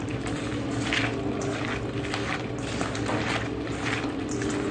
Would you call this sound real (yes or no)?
yes